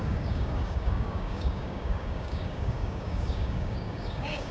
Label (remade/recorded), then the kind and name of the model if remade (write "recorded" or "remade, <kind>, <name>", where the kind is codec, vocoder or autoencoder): remade, codec, DAC